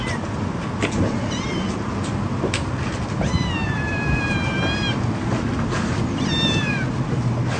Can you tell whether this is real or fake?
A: real